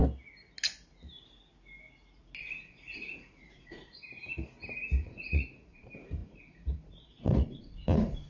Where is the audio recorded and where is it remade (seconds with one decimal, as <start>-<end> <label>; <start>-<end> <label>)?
0.0-2.4 recorded; 2.4-4.0 remade; 4.0-5.0 recorded; 5.0-8.3 remade